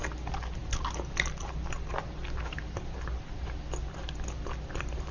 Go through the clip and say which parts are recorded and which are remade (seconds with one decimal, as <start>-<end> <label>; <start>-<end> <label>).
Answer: 0.0-5.1 recorded